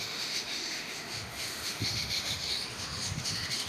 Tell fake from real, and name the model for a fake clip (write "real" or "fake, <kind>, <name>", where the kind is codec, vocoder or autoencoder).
fake, autoencoder, DAC-VAE